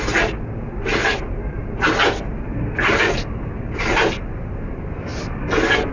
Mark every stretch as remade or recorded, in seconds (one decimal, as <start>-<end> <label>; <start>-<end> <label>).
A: 0.0-1.1 recorded; 1.1-1.6 remade; 1.6-5.9 recorded